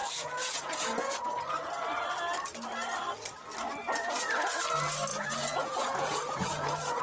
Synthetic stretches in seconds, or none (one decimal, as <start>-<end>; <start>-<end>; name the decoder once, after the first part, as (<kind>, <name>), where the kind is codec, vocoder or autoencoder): 0.0-1.7 (vocoder, Vocos); 5.1-7.0

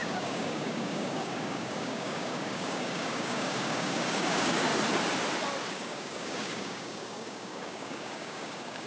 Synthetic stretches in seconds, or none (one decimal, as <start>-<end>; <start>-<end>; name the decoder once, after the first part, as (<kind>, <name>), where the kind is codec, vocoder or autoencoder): 0.0-4.7 (codec, DAC); 5.7-8.9

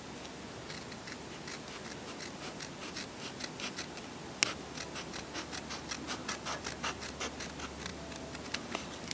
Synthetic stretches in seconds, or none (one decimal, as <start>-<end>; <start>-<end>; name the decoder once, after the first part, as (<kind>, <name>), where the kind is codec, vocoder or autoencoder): 7.9-8.6 (vocoder, BigVGAN v2)